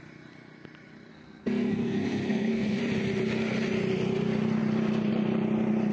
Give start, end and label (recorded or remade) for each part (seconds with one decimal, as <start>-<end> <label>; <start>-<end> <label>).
0.0-1.1 recorded; 1.1-2.8 remade; 2.8-5.9 recorded